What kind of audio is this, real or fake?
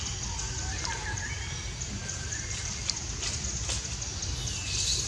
real